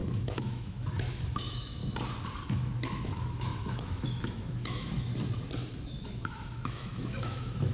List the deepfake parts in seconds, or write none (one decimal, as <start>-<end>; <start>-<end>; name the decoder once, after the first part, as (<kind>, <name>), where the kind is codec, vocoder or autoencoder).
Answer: 0.0-1.8 (autoencoder, DAC-VAE); 2.5-5.1; 5.8-7.7